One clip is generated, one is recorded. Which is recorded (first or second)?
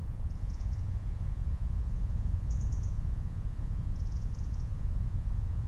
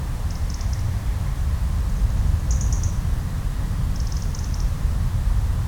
second